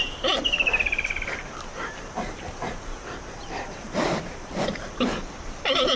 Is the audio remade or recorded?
remade